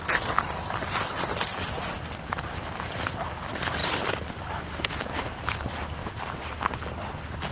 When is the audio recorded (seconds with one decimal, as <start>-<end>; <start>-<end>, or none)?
0.0-6.0; 6.5-7.5